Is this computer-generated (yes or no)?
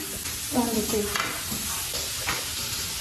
no